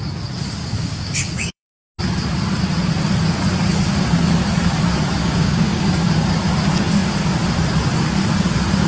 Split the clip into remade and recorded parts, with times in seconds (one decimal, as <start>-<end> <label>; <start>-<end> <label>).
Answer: 0.0-0.6 recorded; 0.6-1.9 remade; 1.9-5.2 recorded; 5.2-5.8 remade; 5.8-8.9 recorded